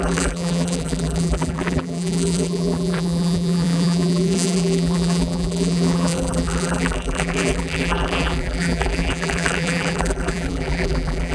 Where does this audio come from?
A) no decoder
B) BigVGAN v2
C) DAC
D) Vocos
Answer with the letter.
B